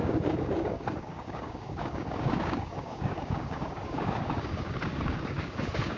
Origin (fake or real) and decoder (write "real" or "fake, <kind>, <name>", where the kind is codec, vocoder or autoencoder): fake, codec, DAC